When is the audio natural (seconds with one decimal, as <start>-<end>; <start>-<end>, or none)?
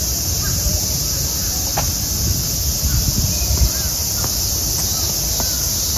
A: 1.7-5.3